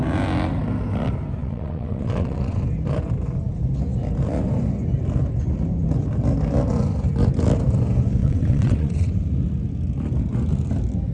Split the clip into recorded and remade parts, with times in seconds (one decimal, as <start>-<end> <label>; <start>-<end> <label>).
0.0-1.4 recorded; 1.4-2.6 remade; 2.6-8.2 recorded; 8.2-9.1 remade; 9.1-11.1 recorded